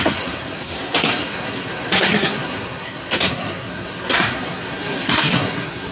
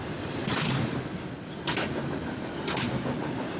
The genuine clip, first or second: second